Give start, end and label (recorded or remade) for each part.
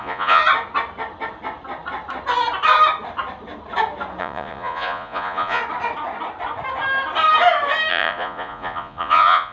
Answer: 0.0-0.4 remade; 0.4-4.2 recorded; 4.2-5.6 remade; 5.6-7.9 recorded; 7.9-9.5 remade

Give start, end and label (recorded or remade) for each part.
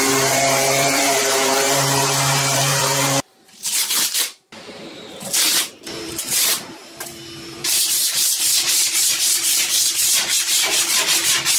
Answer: 0.0-11.6 remade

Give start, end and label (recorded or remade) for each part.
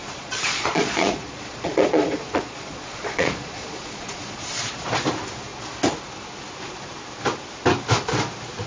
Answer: 0.0-4.7 remade; 4.7-8.7 recorded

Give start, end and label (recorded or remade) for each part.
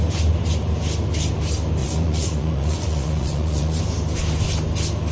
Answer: 0.0-1.8 recorded; 1.8-3.8 remade; 3.8-5.1 recorded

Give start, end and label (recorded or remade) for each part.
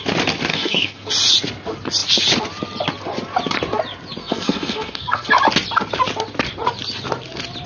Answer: 0.0-0.5 recorded; 0.5-1.1 remade; 1.1-4.2 recorded; 4.2-5.3 remade; 5.3-7.7 recorded